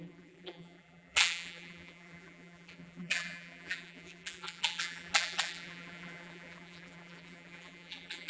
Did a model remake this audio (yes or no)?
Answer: yes